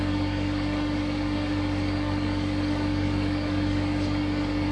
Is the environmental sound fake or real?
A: fake